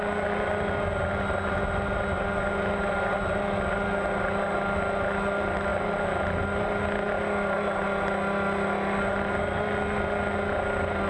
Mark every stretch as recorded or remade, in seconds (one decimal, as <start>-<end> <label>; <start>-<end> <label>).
0.0-11.1 recorded